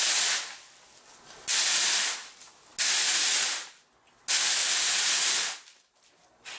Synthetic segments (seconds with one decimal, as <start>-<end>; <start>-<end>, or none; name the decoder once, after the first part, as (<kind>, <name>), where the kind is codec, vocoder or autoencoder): none